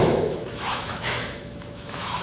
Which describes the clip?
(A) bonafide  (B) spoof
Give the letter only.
B